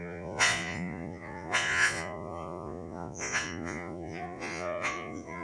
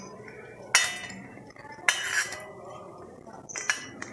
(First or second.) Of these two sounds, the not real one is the first